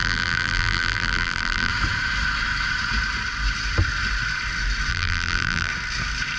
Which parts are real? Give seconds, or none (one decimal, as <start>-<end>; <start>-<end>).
1.7-4.9; 5.7-6.4